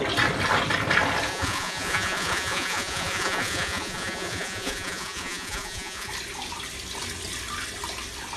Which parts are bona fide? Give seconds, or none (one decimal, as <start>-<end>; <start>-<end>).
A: 0.0-1.3; 6.1-8.4